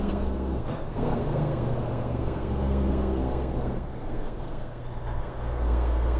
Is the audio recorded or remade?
remade